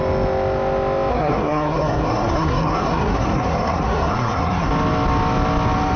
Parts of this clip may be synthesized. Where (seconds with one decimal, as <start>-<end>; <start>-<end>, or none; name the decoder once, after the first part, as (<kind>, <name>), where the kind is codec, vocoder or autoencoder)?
1.1-4.7 (codec, SNAC)